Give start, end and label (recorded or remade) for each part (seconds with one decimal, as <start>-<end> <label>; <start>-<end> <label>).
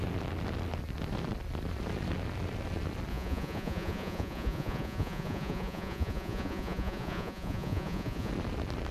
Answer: 0.0-3.1 recorded; 3.1-8.3 remade; 8.3-8.9 recorded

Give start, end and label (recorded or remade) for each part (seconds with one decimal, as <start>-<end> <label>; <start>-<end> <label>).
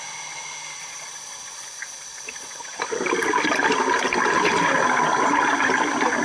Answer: 0.0-0.8 recorded; 0.8-2.8 remade; 2.8-6.2 recorded